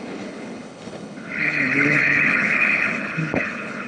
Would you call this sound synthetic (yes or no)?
yes